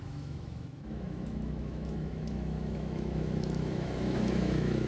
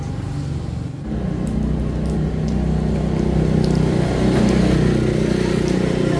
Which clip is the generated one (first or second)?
first